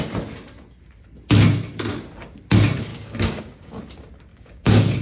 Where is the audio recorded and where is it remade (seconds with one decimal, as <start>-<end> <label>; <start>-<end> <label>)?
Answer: 0.0-2.9 recorded; 2.9-3.8 remade; 3.8-4.3 recorded; 4.3-5.0 remade